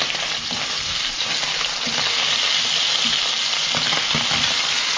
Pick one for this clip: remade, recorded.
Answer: recorded